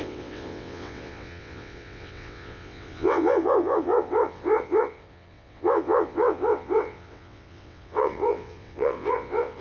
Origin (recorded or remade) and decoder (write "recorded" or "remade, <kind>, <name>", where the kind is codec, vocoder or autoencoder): remade, vocoder, WaveNeXt